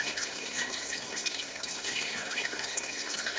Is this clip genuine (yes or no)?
no